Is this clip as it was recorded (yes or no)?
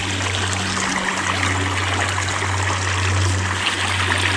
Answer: yes